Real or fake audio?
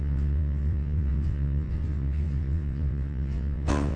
fake